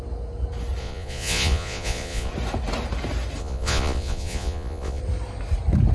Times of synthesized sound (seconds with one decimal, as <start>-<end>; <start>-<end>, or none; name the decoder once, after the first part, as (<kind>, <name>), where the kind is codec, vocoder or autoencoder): 0.8-2.3 (vocoder, Vocos); 3.4-5.0